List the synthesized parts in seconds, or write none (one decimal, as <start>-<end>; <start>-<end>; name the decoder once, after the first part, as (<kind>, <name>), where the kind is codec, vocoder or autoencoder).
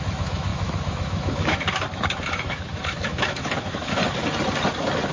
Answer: 0.0-4.0 (autoencoder, DAC-VAE)